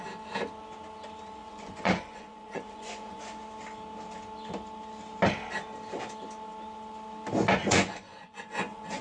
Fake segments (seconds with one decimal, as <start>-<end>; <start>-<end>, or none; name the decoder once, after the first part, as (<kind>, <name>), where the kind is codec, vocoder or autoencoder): 1.4-3.2 (vocoder, Vocos); 7.6-9.0